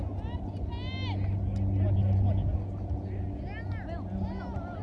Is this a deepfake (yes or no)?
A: no